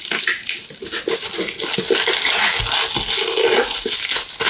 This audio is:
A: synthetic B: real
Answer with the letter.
B